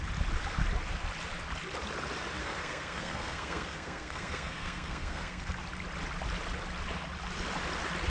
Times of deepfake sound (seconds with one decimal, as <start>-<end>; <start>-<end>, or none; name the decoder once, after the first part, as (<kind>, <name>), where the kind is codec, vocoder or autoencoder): 2.4-5.5 (codec, SNAC)